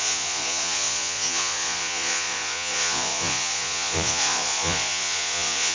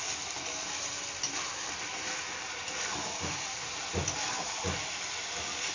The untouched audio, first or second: second